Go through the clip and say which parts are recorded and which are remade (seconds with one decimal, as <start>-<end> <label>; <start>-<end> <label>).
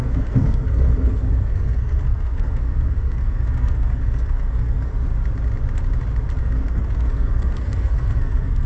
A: 0.0-4.9 remade; 4.9-6.4 recorded; 6.4-8.7 remade